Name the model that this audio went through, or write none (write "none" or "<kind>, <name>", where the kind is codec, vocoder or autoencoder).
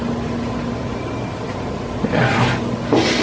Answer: none